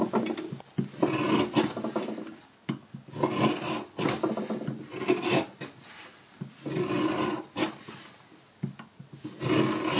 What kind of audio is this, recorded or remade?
recorded